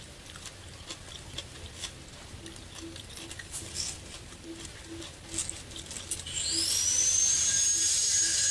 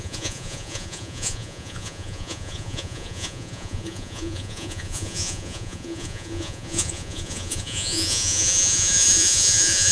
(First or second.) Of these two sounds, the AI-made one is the second